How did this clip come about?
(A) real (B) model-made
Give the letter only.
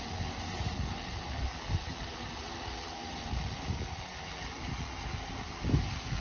A